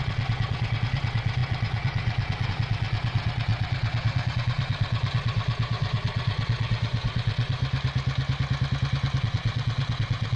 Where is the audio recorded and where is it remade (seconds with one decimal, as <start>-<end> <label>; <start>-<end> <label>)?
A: 0.0-7.6 remade; 7.6-9.2 recorded; 9.2-10.4 remade